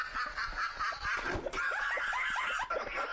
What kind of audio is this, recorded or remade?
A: recorded